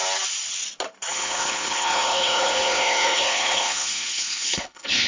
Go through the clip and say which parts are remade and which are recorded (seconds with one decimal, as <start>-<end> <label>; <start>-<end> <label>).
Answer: 0.0-1.1 recorded; 1.1-5.1 remade